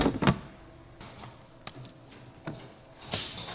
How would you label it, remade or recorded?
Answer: recorded